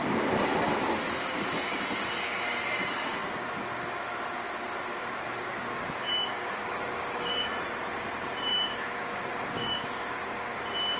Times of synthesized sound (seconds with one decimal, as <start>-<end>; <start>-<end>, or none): 5.5-7.5; 8.5-10.6

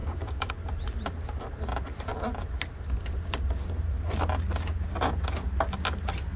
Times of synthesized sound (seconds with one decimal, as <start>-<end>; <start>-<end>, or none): 0.0-0.5

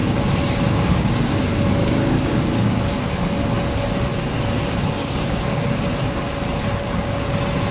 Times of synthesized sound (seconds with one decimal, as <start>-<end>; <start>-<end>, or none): 0.0-1.4; 1.8-2.9; 5.0-5.9

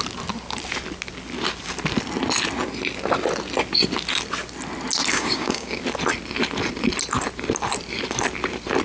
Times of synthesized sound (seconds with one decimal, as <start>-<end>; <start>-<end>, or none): 5.1-5.8

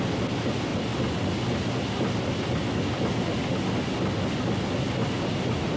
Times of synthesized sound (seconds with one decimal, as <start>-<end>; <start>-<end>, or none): none

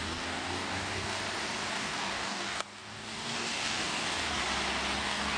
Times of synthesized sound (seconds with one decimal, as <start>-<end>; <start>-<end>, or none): 0.0-1.2; 1.7-4.4; 5.0-5.4

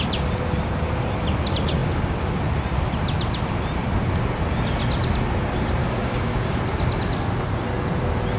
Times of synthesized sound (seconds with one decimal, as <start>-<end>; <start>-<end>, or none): 5.8-6.6

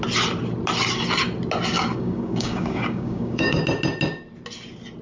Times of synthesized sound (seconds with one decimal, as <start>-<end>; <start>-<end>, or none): 1.7-3.6